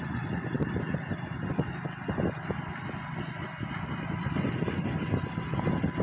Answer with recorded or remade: recorded